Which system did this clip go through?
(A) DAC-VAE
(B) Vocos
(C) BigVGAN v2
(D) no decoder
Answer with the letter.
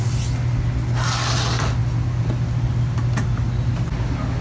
D